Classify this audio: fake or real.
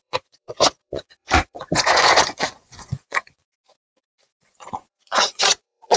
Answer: fake